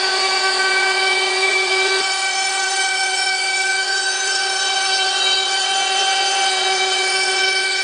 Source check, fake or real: fake